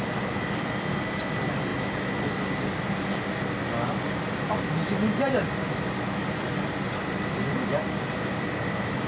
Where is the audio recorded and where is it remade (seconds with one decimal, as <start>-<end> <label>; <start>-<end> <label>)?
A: 0.0-1.7 remade; 1.7-4.3 recorded; 4.3-4.8 remade; 4.8-6.4 recorded; 6.4-9.1 remade